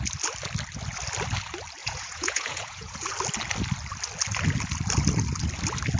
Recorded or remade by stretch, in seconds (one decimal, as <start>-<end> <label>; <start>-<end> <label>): 0.0-1.8 recorded; 1.8-3.1 remade; 3.1-6.0 recorded